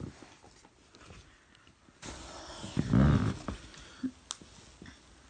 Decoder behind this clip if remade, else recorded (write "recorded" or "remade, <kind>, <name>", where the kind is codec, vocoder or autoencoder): recorded